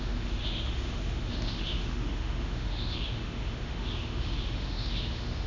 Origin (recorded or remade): remade